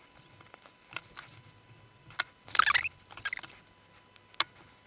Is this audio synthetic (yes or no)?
no